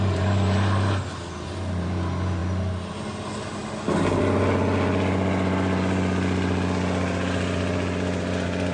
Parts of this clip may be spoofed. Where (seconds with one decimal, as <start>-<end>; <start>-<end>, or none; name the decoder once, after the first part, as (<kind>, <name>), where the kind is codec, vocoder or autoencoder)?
none